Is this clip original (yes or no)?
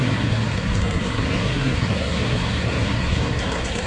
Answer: no